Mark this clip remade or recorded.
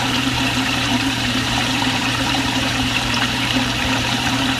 remade